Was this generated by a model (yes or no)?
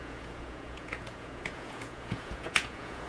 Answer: yes